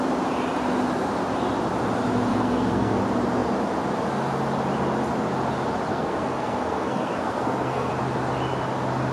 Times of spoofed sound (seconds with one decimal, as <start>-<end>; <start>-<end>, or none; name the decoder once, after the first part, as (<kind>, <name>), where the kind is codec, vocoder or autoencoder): 2.3-3.0 (codec, SNAC); 5.9-7.9